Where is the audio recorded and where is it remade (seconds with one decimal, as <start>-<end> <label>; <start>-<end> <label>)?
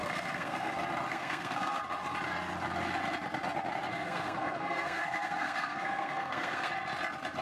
0.0-0.7 remade; 0.7-1.1 recorded; 1.1-1.8 remade; 1.8-3.9 recorded; 3.9-6.7 remade; 6.7-7.4 recorded